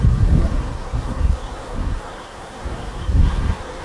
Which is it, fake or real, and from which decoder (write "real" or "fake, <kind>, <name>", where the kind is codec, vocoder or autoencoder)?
fake, codec, SNAC